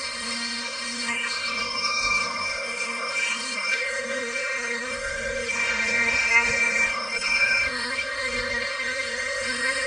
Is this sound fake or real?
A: fake